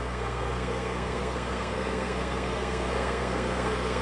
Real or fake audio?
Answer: fake